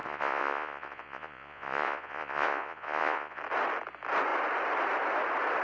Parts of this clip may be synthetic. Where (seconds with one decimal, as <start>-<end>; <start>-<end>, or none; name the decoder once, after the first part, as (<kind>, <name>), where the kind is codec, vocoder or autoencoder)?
0.0-3.4 (vocoder, Vocos)